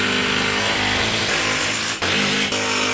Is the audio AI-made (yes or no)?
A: no